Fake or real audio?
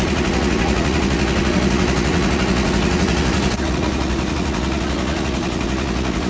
fake